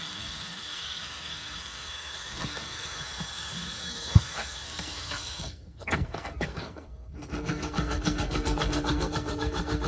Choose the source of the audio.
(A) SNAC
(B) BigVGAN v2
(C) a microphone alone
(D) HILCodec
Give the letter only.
A